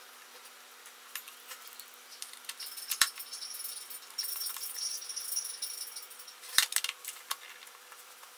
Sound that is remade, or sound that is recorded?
recorded